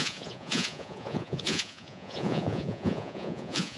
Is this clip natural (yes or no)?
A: no